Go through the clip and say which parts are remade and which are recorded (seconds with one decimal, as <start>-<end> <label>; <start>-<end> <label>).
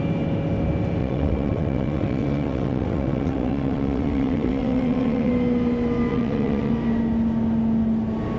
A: 0.0-1.0 recorded; 1.0-5.3 remade; 5.3-6.1 recorded; 6.1-6.7 remade; 6.7-8.4 recorded